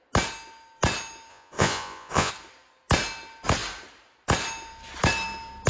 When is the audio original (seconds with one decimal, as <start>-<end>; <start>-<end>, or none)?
0.0-1.3; 2.3-5.7